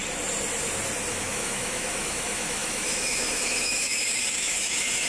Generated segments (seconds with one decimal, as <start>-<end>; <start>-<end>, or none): 1.1-5.1